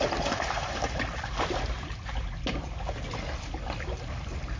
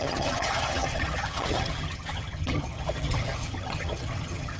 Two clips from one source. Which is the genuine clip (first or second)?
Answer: first